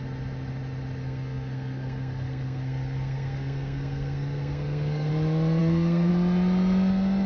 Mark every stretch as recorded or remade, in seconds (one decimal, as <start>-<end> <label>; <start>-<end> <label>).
0.0-1.0 recorded; 1.0-5.1 remade; 5.1-5.6 recorded; 5.6-6.1 remade; 6.1-7.3 recorded